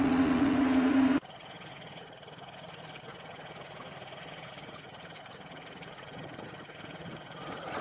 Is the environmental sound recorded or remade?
remade